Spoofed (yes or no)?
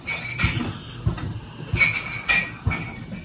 no